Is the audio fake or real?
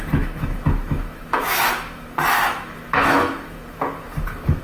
fake